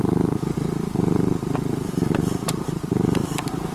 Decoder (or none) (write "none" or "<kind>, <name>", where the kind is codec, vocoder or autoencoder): none